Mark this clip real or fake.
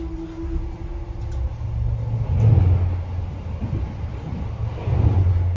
real